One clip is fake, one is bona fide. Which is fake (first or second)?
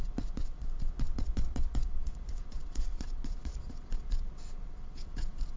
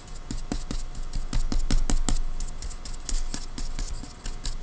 first